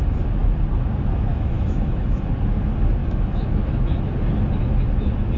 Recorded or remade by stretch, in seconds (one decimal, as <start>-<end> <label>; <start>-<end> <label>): 0.0-1.3 recorded; 1.3-2.1 remade; 2.1-3.0 recorded; 3.0-4.0 remade; 4.0-5.4 recorded